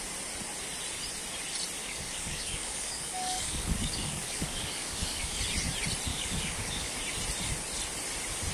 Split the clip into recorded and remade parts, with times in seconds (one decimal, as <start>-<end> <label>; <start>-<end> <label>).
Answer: 0.0-1.8 recorded; 1.8-5.4 remade; 5.4-6.1 recorded; 6.1-7.0 remade; 7.0-8.5 recorded